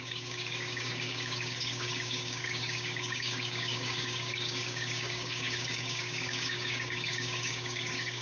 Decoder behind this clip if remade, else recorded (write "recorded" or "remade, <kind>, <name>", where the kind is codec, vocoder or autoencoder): remade, codec, DAC